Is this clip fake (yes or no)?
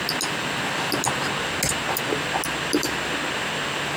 no